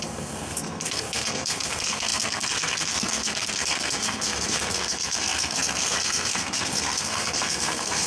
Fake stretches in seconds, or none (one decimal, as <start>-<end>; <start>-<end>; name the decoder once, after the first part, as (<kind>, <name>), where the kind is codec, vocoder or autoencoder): 0.0-8.1 (codec, SNAC)